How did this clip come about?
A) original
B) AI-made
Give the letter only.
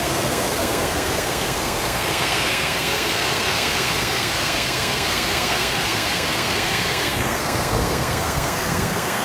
B